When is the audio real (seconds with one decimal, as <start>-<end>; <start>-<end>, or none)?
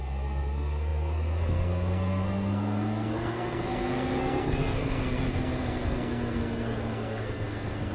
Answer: none